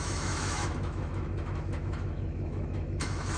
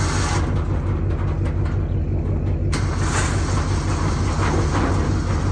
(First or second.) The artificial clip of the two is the first